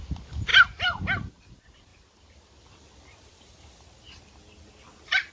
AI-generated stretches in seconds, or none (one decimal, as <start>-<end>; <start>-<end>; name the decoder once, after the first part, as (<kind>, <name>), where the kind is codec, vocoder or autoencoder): none